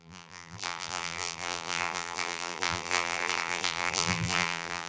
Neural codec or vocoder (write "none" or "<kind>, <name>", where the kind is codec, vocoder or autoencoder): vocoder, BigVGAN v2